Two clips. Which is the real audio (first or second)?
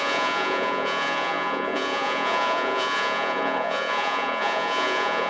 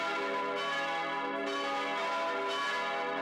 second